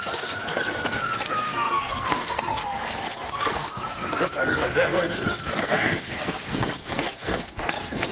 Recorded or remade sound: remade